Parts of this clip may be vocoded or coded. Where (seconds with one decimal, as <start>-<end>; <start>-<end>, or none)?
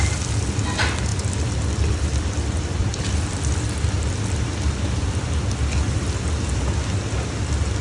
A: 1.1-5.4